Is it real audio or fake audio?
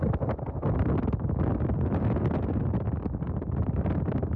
real